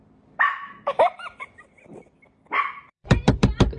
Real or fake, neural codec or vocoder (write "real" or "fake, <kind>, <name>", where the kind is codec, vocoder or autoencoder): fake, vocoder, BigVGAN v2